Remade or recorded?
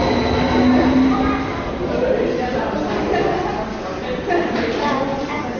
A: recorded